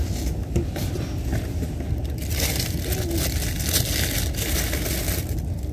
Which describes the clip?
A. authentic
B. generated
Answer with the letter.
A